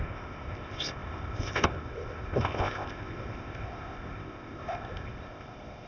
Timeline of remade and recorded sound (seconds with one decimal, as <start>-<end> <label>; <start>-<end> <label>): 0.0-5.9 remade